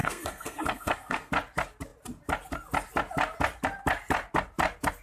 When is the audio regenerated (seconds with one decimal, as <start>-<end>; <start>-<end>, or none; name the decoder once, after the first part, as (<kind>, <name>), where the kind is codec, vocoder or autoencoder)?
0.0-1.3 (codec, SNAC)